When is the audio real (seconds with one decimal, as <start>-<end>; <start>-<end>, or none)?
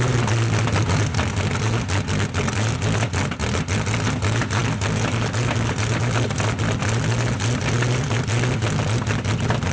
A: 0.0-9.7